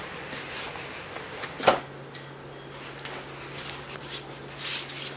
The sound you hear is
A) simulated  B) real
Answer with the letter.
B